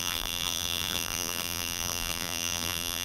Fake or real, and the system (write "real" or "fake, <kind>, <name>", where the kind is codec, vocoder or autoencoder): fake, vocoder, BigVGAN v2